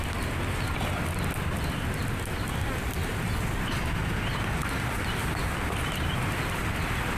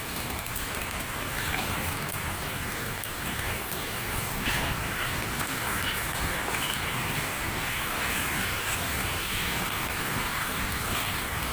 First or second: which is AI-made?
second